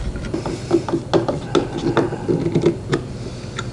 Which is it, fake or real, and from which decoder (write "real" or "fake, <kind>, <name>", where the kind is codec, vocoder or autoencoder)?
real